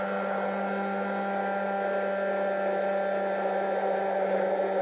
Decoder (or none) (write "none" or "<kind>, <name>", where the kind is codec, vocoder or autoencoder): none